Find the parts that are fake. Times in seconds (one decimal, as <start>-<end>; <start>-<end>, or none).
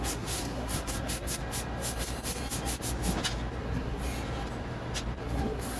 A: 0.0-1.4; 3.6-4.0; 5.2-5.8